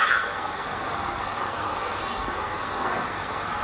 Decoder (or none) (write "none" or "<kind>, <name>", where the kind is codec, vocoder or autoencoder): codec, SNAC